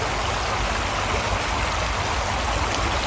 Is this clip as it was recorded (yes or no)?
yes